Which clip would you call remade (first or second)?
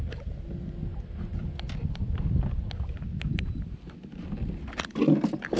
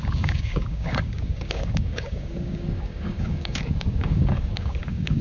second